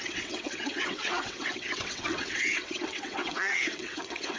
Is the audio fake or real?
fake